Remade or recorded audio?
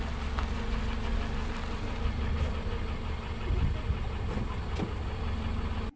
recorded